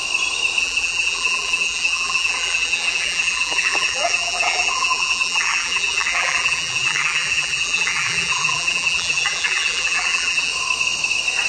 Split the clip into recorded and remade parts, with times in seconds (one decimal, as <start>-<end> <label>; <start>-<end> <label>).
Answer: 0.0-0.6 recorded; 0.6-10.5 remade; 10.5-11.5 recorded